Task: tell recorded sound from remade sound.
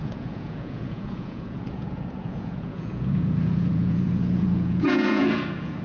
remade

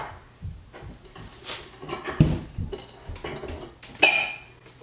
recorded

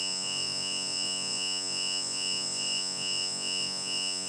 remade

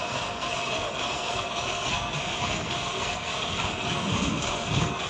remade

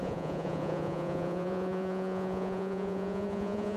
remade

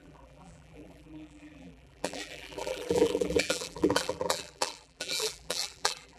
remade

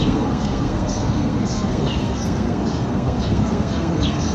remade